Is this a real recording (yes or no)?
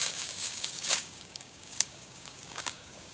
no